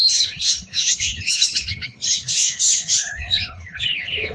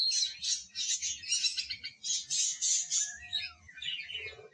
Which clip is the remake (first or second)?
first